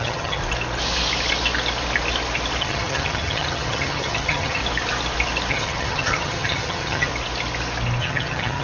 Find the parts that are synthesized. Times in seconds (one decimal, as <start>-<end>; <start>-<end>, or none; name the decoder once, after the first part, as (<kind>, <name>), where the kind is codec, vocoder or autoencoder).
0.0-0.4 (vocoder, HiFi-GAN); 2.6-4.6; 5.5-7.1; 8.0-8.6